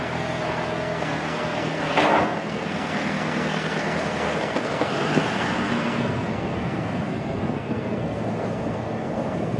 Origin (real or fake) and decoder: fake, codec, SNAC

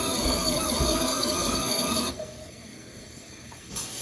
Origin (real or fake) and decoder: fake, codec, SNAC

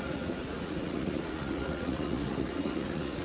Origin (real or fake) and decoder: fake, vocoder, Vocos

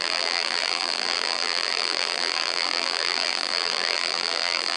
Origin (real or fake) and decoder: fake, vocoder, BigVGAN v2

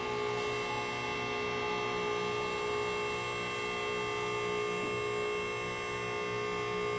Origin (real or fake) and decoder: real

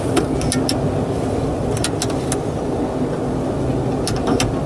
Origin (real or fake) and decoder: real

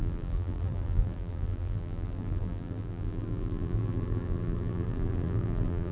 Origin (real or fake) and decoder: fake, vocoder, BigVGAN v2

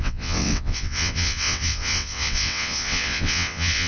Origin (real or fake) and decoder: fake, vocoder, WaveNeXt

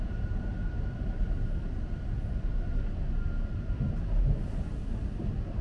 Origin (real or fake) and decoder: real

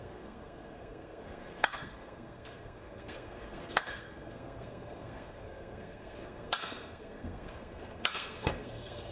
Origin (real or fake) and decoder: fake, codec, SNAC